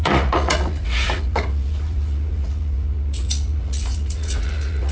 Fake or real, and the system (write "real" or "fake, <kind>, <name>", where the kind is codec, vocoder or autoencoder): fake, vocoder, Vocos